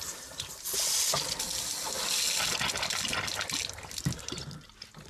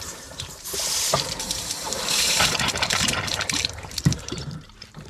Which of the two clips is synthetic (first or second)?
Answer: second